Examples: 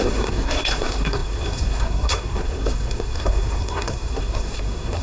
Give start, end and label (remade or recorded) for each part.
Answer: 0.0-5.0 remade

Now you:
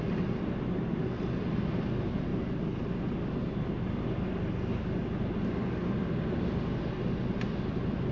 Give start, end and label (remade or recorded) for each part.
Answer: 0.0-8.1 recorded

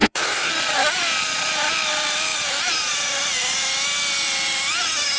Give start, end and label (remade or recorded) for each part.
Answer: 0.0-0.5 remade; 0.5-5.2 recorded

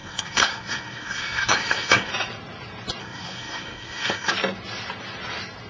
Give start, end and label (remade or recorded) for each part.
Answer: 0.0-2.1 remade; 2.1-3.0 recorded; 3.0-4.3 remade; 4.3-5.7 recorded

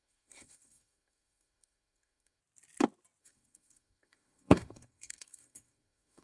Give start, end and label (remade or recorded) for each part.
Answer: 0.0-2.4 remade; 2.4-3.2 recorded; 3.2-6.2 remade

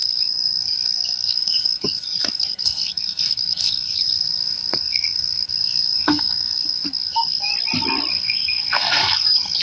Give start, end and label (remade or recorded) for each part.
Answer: 0.0-7.5 remade; 7.5-8.1 recorded; 8.1-9.6 remade

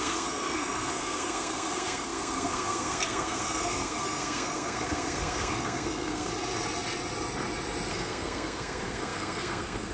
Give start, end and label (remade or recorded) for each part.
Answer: 0.0-6.3 remade; 6.3-7.9 recorded; 7.9-9.9 remade